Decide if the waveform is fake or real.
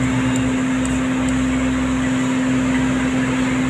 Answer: real